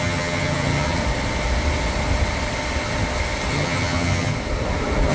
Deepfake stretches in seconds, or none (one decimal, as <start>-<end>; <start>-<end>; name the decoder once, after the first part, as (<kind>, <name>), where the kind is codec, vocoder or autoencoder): 0.0-1.0 (vocoder, HiFi-GAN); 3.5-4.3